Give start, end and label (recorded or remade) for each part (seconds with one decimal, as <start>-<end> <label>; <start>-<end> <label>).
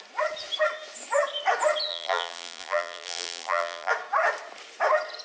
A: 0.0-1.9 recorded; 1.9-3.9 remade; 3.9-5.2 recorded